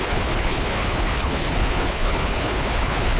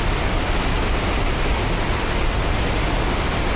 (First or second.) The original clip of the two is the second